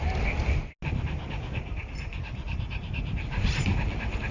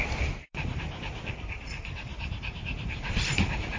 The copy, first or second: second